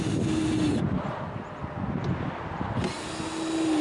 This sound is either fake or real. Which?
real